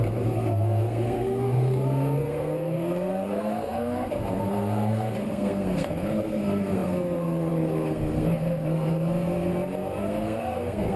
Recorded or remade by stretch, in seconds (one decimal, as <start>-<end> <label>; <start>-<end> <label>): 0.0-9.5 remade; 9.5-10.0 recorded; 10.0-11.0 remade